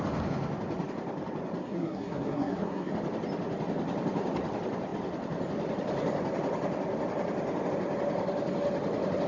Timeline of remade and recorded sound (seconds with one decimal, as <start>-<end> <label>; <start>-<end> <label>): 0.0-1.6 recorded; 1.6-2.9 remade; 2.9-9.3 recorded